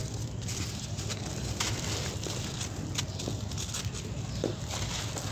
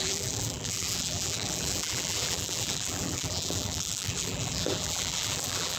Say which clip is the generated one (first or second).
second